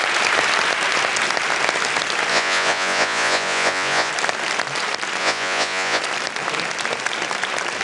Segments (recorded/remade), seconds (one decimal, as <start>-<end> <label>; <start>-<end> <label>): 0.0-2.3 recorded; 2.3-4.1 remade; 4.1-5.2 recorded; 5.2-6.0 remade; 6.0-7.8 recorded